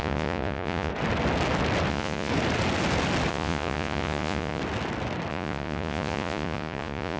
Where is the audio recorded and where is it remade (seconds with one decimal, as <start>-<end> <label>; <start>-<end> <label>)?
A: 0.0-0.9 remade; 0.9-1.9 recorded; 1.9-2.3 remade; 2.3-3.3 recorded; 3.3-4.6 remade; 4.6-5.3 recorded; 5.3-7.2 remade